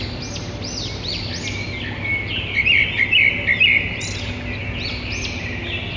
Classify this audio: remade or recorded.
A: recorded